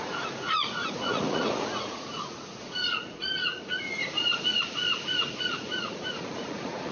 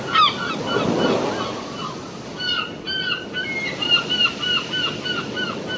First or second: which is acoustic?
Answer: second